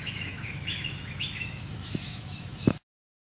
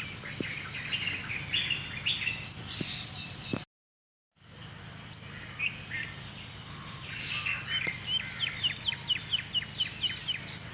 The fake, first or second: first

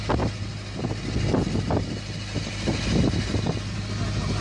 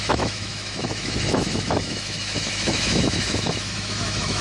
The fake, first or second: second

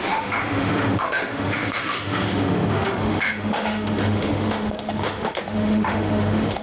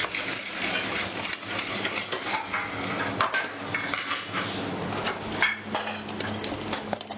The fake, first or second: first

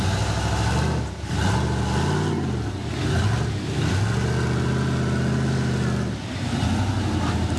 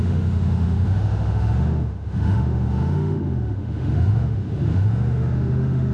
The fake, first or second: second